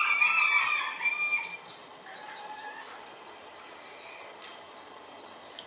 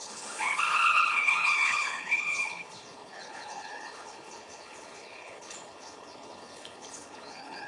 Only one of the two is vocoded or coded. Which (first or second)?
second